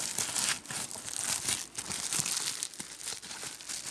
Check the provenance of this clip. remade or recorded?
recorded